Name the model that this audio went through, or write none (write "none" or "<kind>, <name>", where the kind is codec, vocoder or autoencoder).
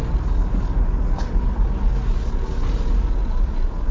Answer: none